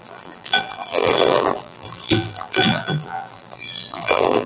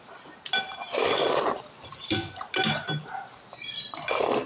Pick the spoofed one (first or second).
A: first